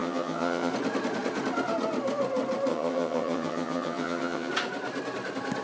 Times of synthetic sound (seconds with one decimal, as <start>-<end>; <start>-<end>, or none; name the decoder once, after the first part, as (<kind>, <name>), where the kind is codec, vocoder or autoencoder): 0.0-0.7 (vocoder, HiFi-GAN); 2.7-4.5